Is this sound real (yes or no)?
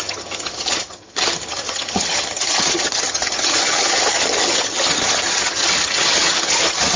no